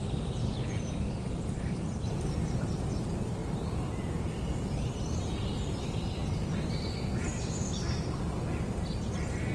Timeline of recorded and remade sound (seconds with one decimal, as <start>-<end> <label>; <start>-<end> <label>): 0.0-9.5 recorded